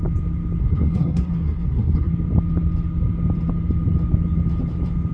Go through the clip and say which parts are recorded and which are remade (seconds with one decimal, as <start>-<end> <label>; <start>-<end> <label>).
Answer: 0.0-0.6 recorded; 0.6-2.1 remade; 2.1-5.1 recorded